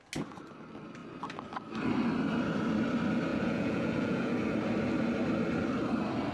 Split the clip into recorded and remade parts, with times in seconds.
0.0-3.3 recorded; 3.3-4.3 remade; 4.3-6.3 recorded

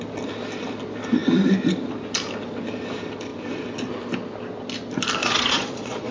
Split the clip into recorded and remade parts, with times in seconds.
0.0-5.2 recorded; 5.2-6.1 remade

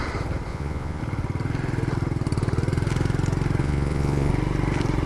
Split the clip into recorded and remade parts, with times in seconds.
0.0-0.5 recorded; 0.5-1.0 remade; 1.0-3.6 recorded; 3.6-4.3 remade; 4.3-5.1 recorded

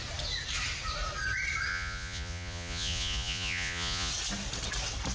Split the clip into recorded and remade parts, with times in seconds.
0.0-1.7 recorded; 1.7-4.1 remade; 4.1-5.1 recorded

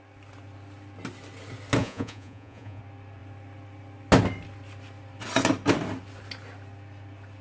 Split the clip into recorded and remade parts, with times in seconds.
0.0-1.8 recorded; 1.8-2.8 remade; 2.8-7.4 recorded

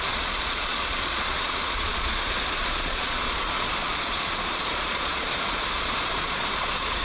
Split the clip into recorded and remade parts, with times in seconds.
0.0-7.0 remade

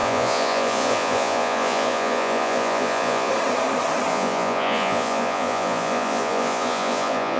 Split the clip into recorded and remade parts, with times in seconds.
0.0-3.3 remade; 3.3-4.1 recorded; 4.1-7.4 remade